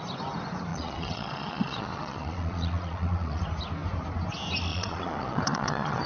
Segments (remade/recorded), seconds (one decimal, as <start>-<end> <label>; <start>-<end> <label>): 0.0-0.7 recorded; 0.7-3.4 remade; 3.4-4.7 recorded; 4.7-6.1 remade